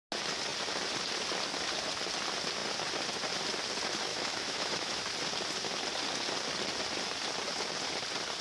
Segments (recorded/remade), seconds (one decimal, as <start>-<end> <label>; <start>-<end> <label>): 0.0-4.1 recorded; 4.1-5.0 remade; 5.0-8.4 recorded